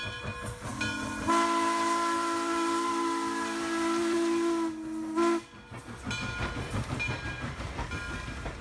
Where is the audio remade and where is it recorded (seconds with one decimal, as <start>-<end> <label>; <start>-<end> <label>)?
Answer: 0.0-8.6 recorded